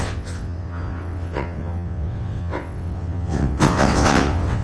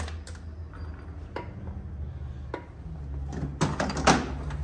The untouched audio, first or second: second